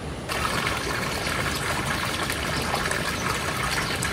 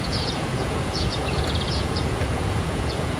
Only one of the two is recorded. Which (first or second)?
first